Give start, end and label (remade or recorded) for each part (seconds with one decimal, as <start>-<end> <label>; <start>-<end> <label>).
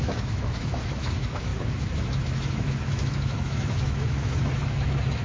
0.0-5.2 remade